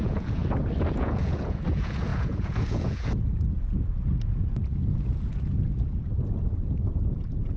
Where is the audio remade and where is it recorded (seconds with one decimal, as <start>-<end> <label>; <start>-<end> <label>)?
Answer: 0.0-0.4 remade; 0.4-0.9 recorded; 0.9-7.6 remade